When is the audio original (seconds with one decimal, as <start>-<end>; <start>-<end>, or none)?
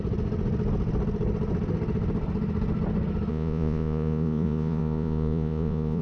0.0-3.3